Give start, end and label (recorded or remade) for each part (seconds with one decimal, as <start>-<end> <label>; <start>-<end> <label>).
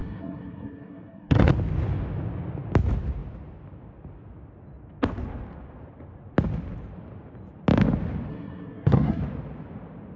0.0-1.5 remade; 1.5-8.3 recorded; 8.3-9.2 remade; 9.2-10.2 recorded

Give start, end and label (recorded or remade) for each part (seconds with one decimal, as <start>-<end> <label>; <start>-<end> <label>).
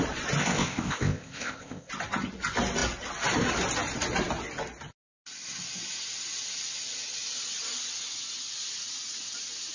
0.0-0.4 recorded; 0.4-1.9 remade; 1.9-9.7 recorded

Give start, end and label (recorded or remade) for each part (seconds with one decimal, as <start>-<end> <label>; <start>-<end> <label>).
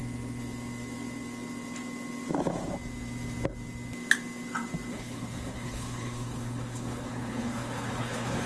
0.0-4.9 recorded; 4.9-8.5 remade